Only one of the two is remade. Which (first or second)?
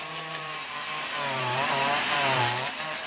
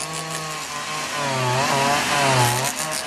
first